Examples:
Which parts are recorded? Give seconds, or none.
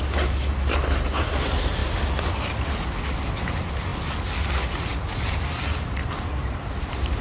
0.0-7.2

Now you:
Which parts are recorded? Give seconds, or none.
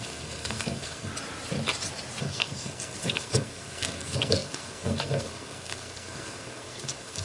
1.1-2.2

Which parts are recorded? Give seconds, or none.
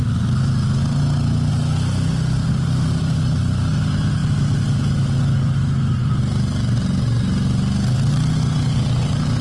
0.0-9.4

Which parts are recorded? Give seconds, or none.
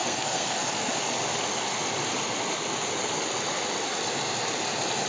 0.9-5.1